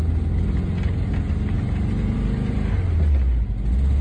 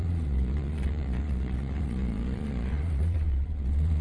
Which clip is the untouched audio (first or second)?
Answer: first